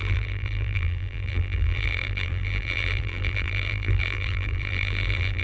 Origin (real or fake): fake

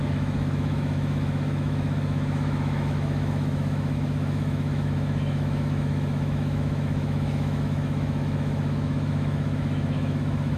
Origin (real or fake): fake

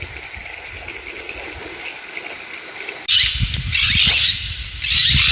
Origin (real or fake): real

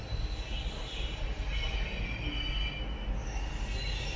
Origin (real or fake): real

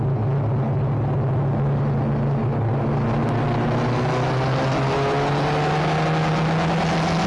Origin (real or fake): real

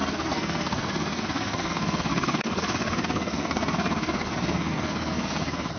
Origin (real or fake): fake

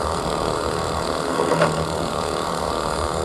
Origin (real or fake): fake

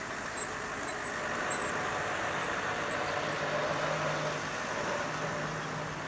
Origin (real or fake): real